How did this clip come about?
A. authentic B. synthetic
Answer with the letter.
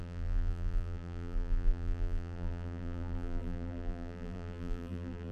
B